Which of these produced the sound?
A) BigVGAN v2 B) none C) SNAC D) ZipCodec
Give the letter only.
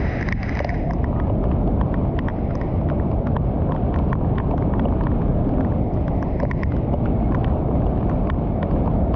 B